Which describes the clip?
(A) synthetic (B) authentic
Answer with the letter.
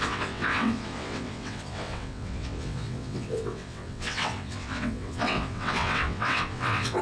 A